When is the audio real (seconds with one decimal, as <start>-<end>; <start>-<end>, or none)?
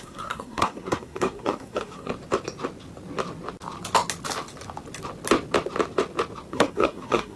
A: 2.1-6.5